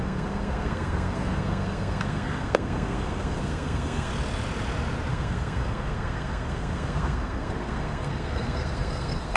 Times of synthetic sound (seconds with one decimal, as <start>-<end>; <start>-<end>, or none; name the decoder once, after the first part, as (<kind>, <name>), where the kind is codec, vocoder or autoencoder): 0.0-4.1 (codec, SNAC); 5.1-9.4